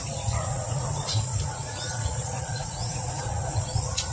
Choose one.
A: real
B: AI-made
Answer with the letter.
B